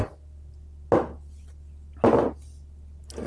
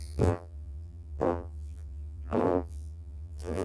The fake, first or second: second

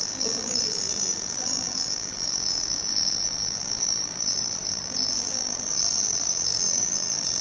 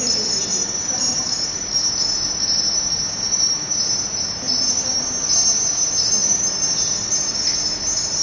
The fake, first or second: first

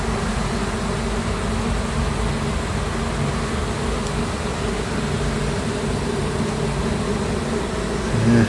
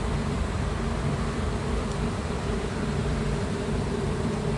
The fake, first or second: second